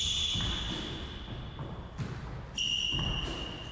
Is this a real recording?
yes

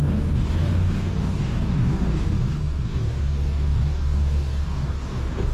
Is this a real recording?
no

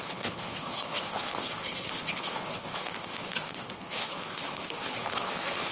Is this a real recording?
no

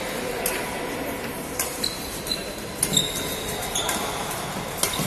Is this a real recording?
yes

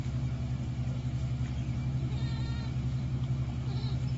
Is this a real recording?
yes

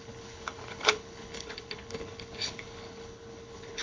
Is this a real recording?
no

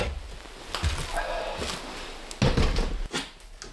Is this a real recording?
yes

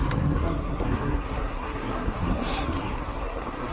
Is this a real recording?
no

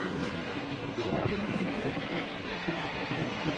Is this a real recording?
no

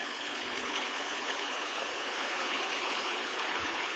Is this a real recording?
no